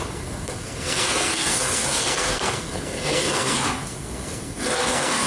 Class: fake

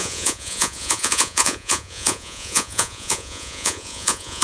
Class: fake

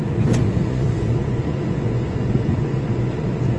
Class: fake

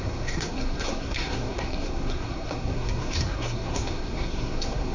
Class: fake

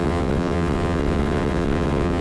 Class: fake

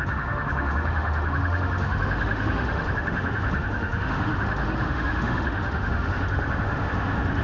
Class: fake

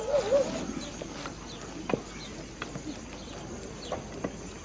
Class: real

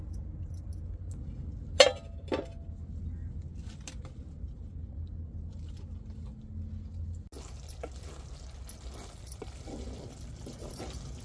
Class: real